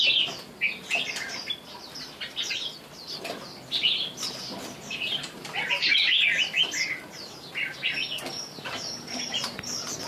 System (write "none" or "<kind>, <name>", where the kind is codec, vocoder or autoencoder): none